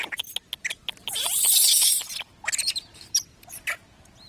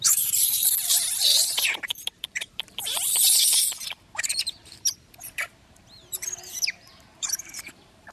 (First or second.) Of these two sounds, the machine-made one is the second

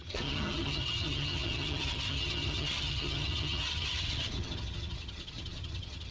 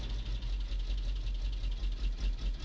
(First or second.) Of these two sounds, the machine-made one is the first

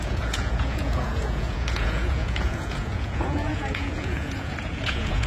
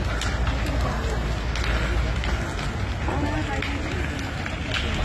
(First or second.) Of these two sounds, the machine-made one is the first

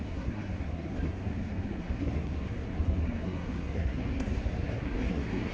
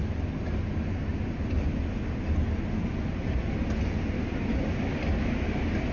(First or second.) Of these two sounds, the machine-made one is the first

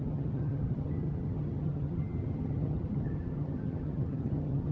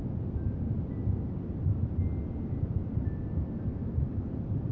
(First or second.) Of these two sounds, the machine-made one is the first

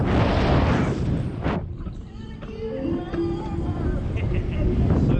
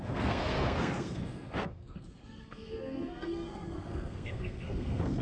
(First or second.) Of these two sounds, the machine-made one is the second